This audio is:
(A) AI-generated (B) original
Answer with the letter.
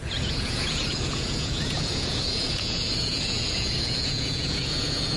A